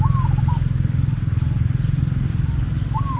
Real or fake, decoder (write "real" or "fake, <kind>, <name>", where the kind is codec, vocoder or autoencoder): real